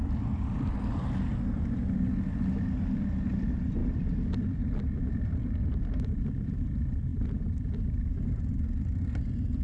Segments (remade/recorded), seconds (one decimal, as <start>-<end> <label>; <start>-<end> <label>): 0.0-1.3 remade; 1.3-3.3 recorded; 3.3-9.6 remade